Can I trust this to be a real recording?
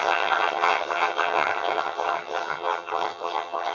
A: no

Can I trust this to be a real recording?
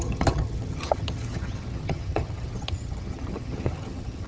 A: no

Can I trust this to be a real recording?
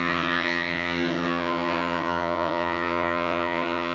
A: no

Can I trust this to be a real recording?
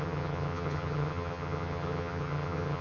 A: no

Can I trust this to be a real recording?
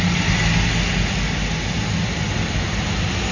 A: yes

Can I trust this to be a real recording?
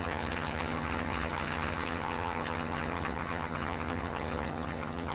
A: no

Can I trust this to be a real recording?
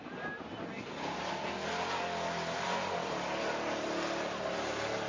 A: yes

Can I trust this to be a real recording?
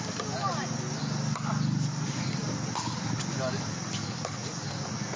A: yes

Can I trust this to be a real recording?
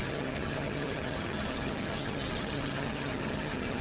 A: no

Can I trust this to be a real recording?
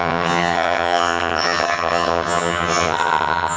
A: no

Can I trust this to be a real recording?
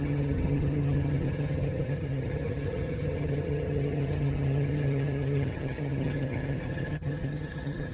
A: no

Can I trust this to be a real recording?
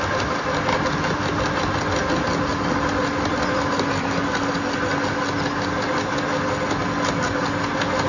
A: yes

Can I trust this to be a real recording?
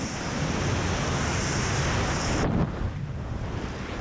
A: yes